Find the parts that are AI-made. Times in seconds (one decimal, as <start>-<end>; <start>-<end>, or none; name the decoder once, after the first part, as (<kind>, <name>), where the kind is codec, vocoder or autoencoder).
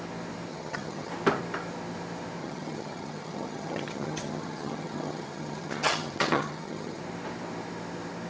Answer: 0.5-1.1 (vocoder, HiFi-GAN); 2.4-7.0